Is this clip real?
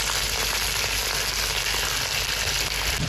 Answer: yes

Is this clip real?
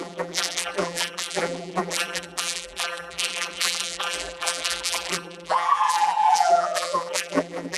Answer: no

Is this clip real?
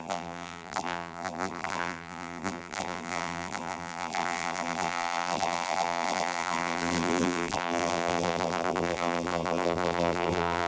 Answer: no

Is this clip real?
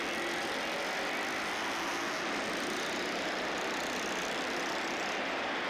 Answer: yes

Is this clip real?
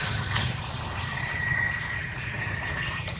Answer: no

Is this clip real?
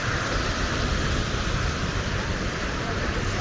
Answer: no